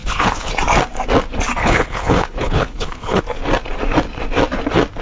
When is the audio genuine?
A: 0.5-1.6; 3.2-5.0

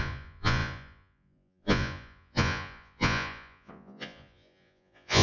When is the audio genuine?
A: none

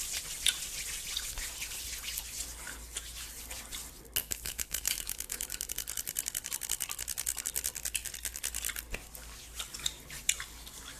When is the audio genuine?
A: 0.0-4.2; 5.7-11.0

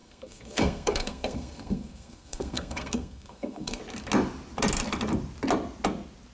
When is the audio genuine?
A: 3.8-6.3